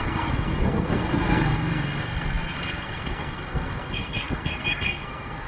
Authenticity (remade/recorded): remade